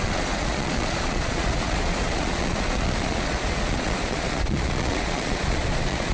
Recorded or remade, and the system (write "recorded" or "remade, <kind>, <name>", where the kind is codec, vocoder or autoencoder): remade, vocoder, Vocos